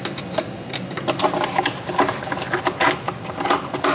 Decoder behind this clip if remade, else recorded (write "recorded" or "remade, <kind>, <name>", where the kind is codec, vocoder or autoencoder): recorded